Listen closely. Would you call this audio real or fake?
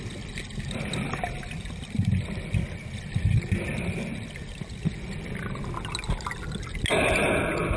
real